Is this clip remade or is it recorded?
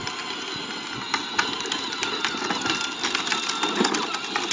recorded